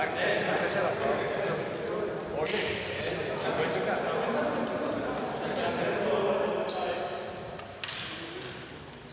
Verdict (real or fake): real